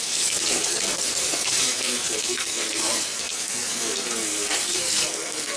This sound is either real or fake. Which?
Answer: fake